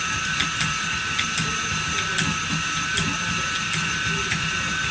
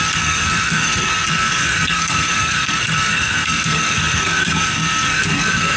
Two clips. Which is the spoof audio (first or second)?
second